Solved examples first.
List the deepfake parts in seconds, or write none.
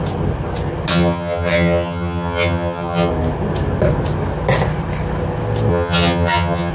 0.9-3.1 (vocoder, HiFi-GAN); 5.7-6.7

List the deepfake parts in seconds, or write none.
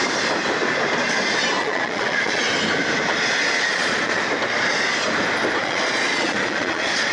1.6-2.4 (vocoder, Vocos); 3.7-4.2; 5.6-7.1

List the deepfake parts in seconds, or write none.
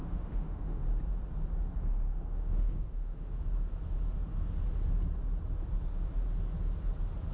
0.0-0.8 (autoencoder, DAC-VAE); 2.1-3.4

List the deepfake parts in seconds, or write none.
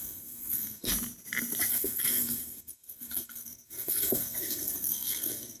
0.0-0.9 (codec, SNAC); 1.7-5.6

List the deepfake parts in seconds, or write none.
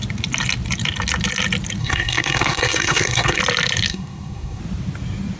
1.8-3.4 (codec, SNAC); 3.9-4.6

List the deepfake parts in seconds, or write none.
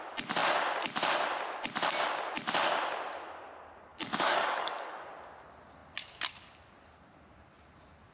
3.9-5.0 (codec, DAC)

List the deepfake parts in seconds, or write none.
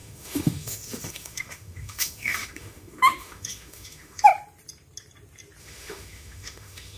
0.0-4.3 (autoencoder, DAC-VAE); 5.6-7.0